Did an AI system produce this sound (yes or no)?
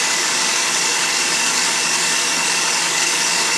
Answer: yes